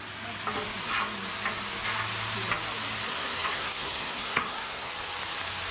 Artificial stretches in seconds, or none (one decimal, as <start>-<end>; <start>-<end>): 3.1-4.9